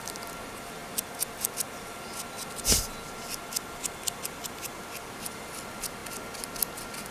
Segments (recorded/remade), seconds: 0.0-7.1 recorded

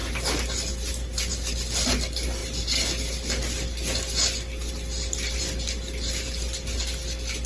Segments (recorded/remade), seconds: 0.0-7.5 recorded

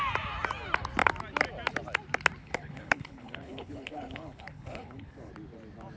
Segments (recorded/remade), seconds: 0.0-2.4 recorded; 2.4-5.3 remade; 5.3-6.0 recorded